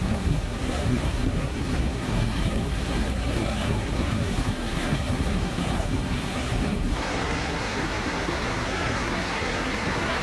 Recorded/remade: remade